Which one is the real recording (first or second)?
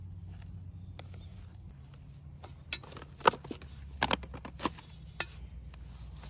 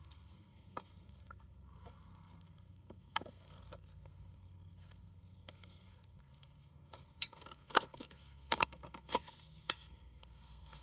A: first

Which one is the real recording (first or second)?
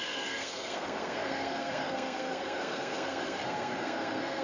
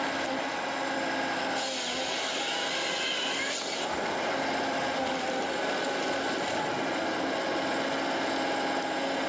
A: second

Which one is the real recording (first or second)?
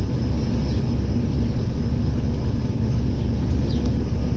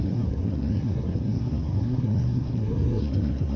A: first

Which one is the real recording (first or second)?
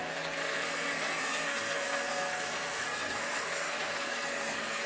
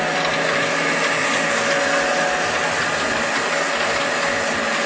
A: second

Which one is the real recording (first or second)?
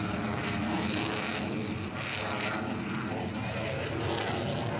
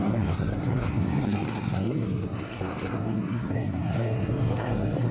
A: first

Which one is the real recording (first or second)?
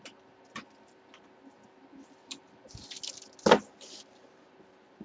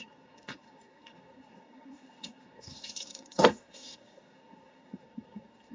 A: first